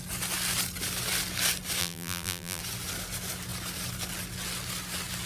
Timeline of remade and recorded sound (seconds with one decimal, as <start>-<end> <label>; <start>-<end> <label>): 0.0-1.8 recorded; 1.8-2.6 remade; 2.6-5.3 recorded